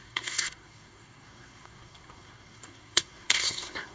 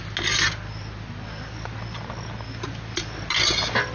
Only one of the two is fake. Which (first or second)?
first